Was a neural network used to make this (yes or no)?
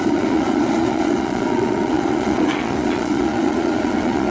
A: yes